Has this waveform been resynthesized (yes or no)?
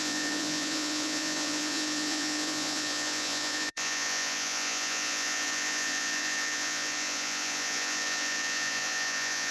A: yes